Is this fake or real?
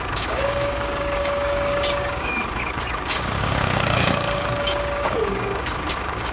fake